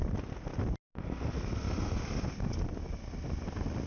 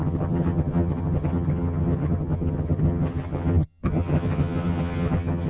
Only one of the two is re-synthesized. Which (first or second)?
second